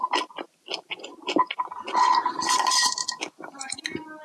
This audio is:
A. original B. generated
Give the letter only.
A